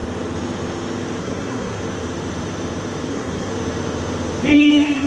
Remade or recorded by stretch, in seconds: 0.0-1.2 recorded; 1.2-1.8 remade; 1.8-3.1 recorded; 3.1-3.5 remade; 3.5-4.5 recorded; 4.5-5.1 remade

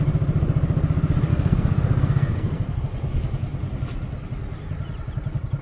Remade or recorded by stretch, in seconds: 0.0-1.3 recorded; 1.3-2.8 remade; 2.8-5.6 recorded

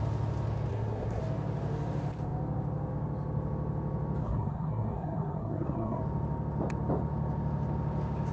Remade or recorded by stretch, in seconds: 0.0-0.7 recorded; 0.7-1.2 remade; 1.2-4.2 recorded; 4.2-6.0 remade; 6.0-8.3 recorded